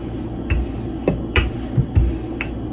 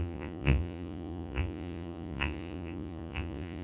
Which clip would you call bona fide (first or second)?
first